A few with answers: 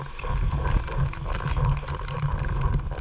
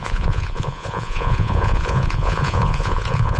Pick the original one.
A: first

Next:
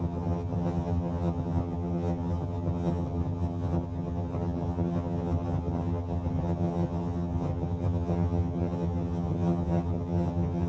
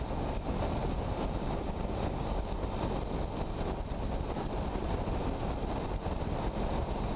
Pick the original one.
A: second